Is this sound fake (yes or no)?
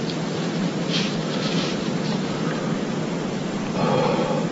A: yes